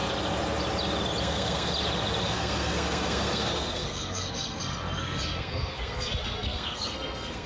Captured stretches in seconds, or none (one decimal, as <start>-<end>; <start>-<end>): 0.0-1.2; 1.7-2.2